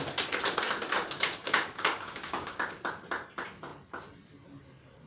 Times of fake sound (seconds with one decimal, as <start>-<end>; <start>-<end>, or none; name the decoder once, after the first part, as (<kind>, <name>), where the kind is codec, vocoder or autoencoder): 1.4-2.7 (codec, DAC)